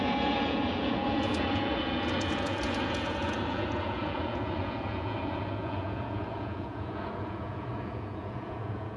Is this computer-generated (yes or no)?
yes